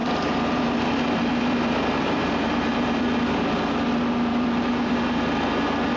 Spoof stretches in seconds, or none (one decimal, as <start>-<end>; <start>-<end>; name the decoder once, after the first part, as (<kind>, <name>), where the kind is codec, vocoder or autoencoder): 0.0-3.0 (vocoder, BigVGAN v2); 4.3-5.0